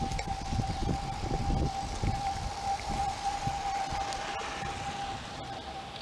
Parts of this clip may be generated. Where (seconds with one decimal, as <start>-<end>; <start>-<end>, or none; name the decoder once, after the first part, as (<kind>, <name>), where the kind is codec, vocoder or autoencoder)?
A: none